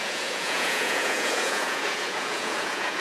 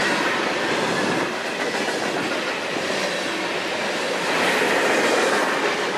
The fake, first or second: first